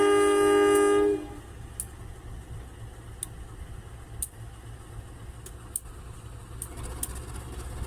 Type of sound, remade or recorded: recorded